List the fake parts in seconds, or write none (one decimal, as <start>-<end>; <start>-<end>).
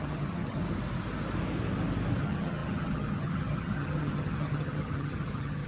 0.0-0.6; 2.2-5.7